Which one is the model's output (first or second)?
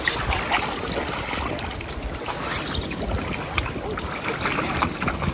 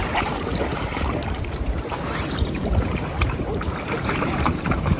second